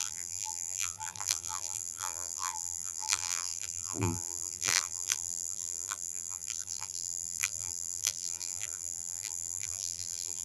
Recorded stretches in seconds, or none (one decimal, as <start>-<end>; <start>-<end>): none